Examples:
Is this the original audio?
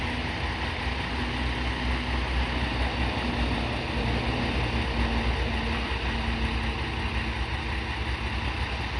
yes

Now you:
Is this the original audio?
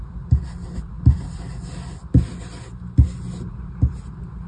yes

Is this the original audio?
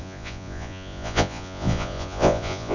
no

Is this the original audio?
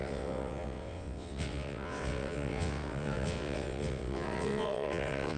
no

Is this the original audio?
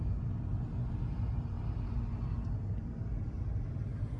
yes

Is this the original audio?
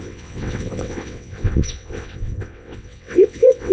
no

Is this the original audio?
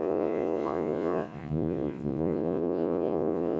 no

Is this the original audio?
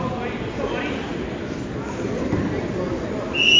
yes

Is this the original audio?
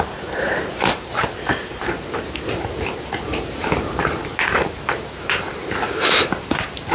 no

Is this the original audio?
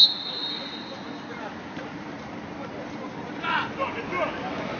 yes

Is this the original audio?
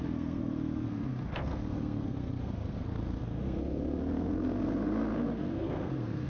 no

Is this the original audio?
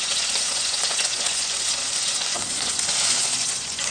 no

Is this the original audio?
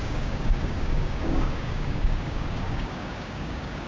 no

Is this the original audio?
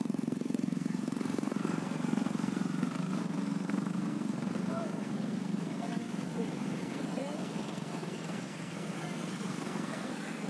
no